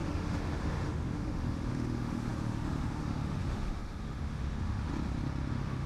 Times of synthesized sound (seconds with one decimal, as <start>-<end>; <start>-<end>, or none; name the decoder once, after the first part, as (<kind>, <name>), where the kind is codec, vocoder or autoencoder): 0.0-4.9 (autoencoder, DAC-VAE); 5.5-5.9